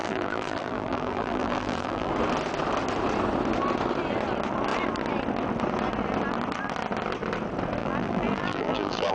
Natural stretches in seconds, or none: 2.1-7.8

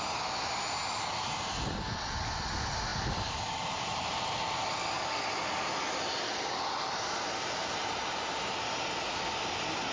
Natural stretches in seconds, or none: 0.0-2.9; 4.4-7.6; 8.5-9.9

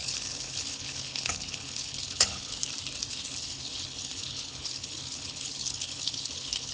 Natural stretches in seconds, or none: 2.6-3.1

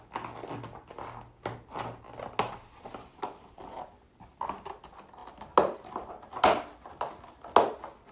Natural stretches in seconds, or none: 0.0-8.1

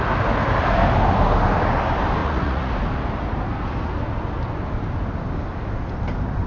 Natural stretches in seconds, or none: 0.0-2.2; 2.7-6.5

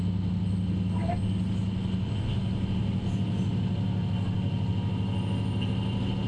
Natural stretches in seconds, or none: 0.0-6.3

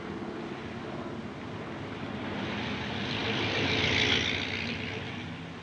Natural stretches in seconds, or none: 0.0-5.6

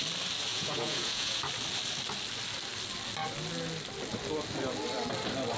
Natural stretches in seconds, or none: 0.0-0.5; 1.4-5.6